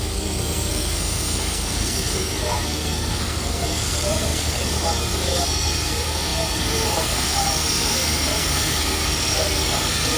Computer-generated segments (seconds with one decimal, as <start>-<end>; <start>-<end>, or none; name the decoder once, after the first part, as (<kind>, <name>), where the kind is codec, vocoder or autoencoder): 0.0-10.2 (codec, SNAC)